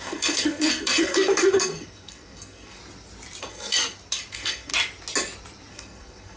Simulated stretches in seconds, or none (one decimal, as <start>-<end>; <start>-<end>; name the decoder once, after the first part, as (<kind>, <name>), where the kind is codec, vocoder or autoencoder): 0.0-2.8 (codec, SNAC); 3.4-3.8; 4.3-4.7; 5.7-6.4